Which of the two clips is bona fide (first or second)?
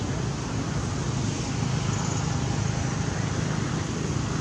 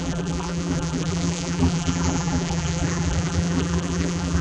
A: first